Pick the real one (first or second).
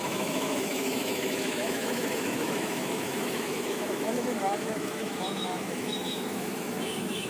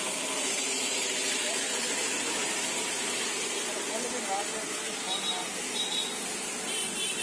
second